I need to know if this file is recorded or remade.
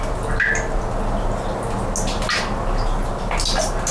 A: recorded